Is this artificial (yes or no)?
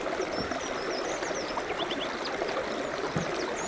no